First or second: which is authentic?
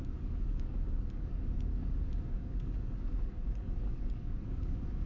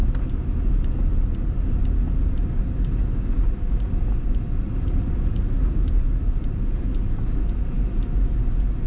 second